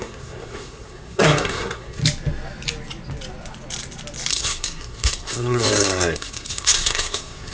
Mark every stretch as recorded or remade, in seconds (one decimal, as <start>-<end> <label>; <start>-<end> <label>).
0.0-2.0 remade; 2.0-4.3 recorded; 4.3-7.5 remade